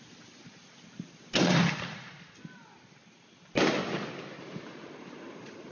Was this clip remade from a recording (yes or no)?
no